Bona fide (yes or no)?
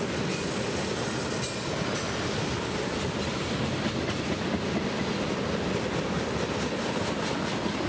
yes